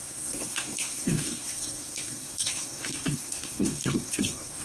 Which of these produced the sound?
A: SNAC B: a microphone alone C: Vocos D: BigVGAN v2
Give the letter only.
A